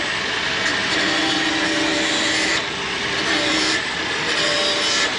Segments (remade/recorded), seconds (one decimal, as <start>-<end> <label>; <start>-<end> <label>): 0.0-2.5 recorded; 2.5-4.1 remade; 4.1-5.2 recorded